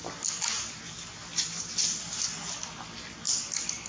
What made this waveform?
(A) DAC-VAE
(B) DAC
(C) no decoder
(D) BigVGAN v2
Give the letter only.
C